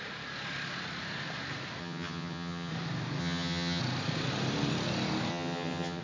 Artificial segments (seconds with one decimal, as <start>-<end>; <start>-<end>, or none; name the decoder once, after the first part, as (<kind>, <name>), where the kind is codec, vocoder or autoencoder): 1.8-2.7 (vocoder, HiFi-GAN); 3.2-3.8; 5.3-6.0